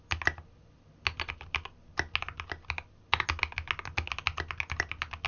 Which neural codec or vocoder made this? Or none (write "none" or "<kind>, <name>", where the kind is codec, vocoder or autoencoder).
none